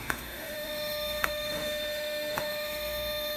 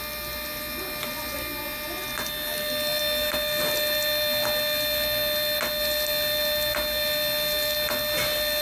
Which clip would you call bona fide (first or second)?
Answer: second